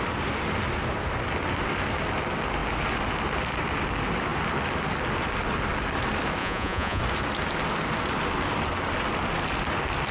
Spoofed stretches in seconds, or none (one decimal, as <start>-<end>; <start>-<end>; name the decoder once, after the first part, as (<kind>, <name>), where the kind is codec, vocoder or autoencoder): 6.4-7.0 (vocoder, Vocos)